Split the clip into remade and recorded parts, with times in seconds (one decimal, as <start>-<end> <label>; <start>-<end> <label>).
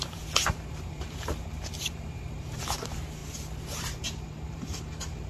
0.0-5.3 remade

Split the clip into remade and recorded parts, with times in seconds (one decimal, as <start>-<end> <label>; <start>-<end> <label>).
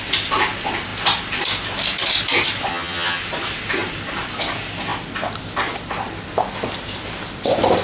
0.0-2.7 recorded; 2.7-3.2 remade; 3.2-7.8 recorded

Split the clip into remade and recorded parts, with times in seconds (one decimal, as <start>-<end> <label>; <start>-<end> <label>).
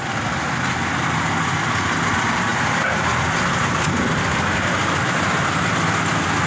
0.0-6.5 recorded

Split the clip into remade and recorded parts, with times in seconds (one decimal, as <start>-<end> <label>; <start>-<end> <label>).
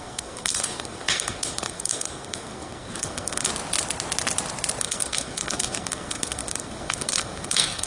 0.0-3.5 remade; 3.5-4.8 recorded; 4.8-7.9 remade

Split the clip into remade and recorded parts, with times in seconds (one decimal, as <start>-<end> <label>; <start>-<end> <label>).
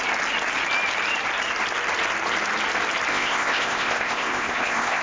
0.0-3.1 recorded; 3.1-5.0 remade